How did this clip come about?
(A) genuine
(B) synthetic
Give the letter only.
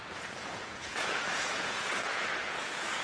B